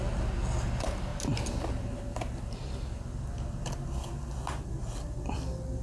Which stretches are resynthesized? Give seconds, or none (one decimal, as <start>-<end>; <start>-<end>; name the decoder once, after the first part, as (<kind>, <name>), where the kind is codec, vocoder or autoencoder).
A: none